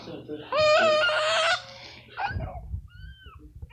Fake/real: real